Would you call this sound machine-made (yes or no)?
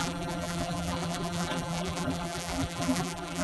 yes